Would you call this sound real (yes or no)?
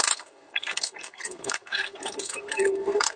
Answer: no